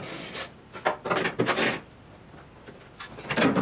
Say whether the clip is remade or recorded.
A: recorded